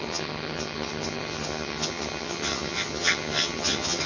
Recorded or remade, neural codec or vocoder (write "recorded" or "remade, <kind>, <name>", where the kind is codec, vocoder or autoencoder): remade, vocoder, HiFi-GAN